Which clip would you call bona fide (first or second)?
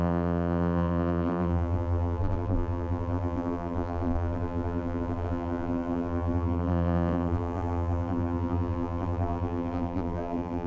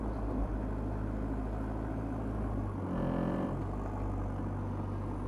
second